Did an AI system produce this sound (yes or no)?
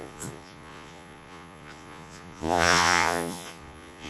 yes